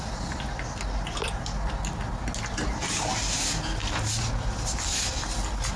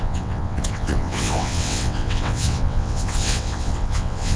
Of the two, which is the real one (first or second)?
first